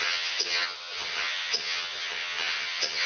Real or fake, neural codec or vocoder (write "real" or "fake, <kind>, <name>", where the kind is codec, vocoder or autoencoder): fake, vocoder, HiFi-GAN